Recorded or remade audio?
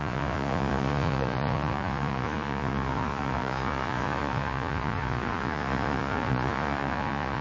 remade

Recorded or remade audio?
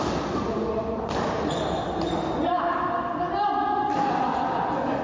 recorded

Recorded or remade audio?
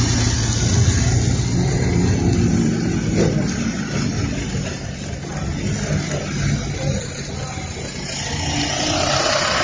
recorded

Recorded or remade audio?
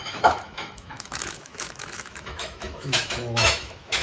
remade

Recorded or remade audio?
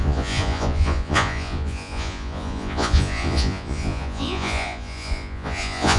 remade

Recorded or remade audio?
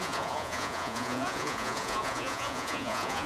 remade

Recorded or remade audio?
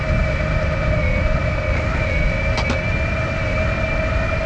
recorded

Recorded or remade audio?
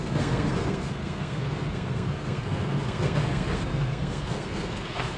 remade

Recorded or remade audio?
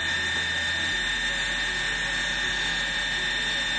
recorded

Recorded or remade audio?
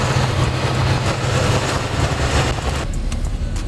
recorded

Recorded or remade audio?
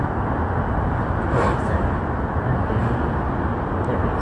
recorded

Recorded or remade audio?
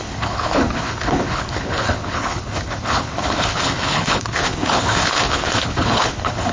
remade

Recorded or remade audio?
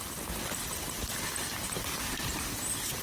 recorded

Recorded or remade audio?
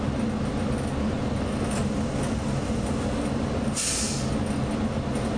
recorded